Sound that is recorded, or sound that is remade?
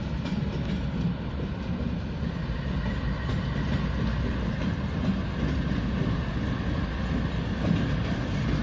recorded